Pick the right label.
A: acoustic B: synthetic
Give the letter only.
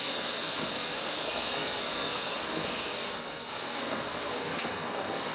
B